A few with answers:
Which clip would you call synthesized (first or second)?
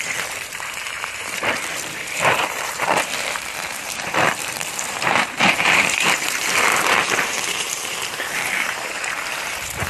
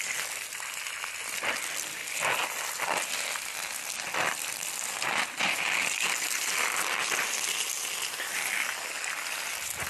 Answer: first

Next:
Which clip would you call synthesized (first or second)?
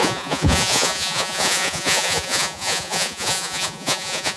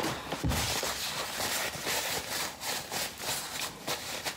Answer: first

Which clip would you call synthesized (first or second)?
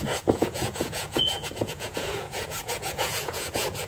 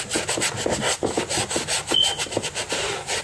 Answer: first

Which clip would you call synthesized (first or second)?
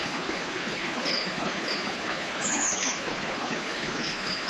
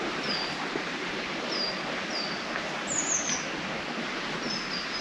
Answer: first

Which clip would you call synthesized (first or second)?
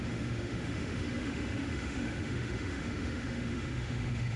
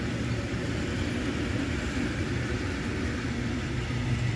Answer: first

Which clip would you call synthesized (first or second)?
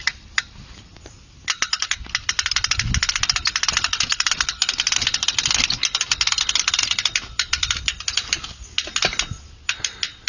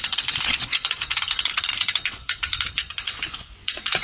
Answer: second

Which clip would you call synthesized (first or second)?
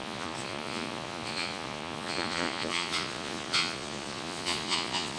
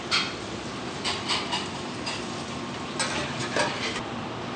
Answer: first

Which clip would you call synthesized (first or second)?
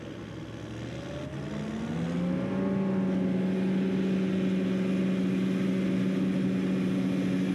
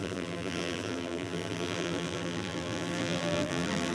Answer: second